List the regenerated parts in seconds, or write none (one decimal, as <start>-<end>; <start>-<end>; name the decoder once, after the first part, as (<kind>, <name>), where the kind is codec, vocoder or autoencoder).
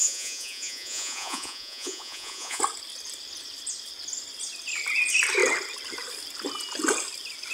0.0-2.6 (vocoder, Vocos)